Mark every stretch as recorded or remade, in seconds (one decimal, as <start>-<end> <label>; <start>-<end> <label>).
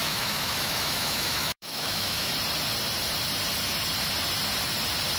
0.0-2.3 remade; 2.3-5.2 recorded